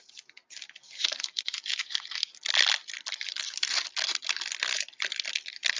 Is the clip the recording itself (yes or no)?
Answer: yes